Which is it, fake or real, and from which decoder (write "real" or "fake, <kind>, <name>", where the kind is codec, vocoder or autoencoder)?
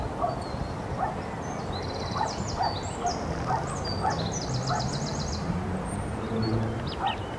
real